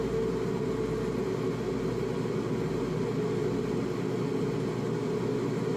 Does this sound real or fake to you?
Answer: real